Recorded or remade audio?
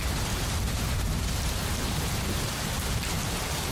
remade